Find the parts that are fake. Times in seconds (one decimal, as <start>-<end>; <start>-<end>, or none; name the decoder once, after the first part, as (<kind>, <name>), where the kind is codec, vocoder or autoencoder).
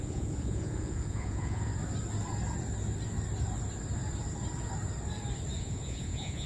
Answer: 0.0-1.7 (vocoder, Vocos); 5.6-6.5